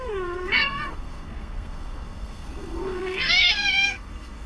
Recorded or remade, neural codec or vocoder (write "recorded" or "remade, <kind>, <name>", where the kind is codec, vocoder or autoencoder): remade, codec, SNAC